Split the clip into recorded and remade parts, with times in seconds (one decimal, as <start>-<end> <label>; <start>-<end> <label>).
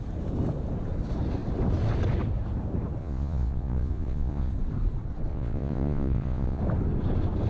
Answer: 0.0-3.0 recorded; 3.0-4.5 remade; 4.5-5.3 recorded; 5.3-6.6 remade; 6.6-7.5 recorded